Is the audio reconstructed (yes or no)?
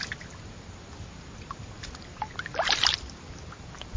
no